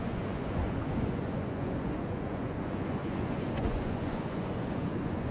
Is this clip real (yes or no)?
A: no